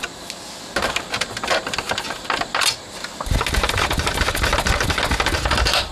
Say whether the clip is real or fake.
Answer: real